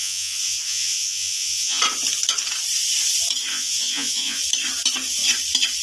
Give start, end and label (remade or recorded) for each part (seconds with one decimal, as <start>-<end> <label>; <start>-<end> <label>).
0.0-1.8 remade; 1.8-3.5 recorded; 3.5-4.4 remade; 4.4-5.8 recorded